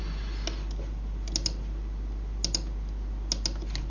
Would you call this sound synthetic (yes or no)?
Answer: no